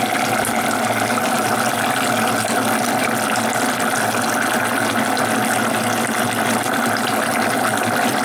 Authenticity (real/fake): real